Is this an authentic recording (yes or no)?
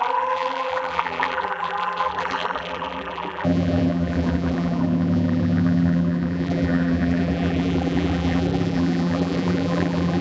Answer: no